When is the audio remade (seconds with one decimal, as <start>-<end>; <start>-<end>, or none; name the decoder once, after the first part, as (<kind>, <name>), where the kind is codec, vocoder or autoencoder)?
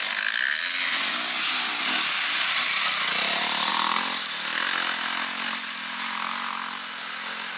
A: none